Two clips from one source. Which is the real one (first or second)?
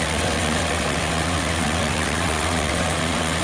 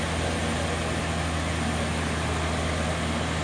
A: second